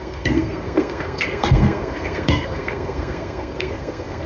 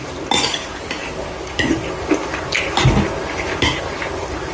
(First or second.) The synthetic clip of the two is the first